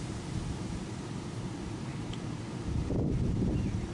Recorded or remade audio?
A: remade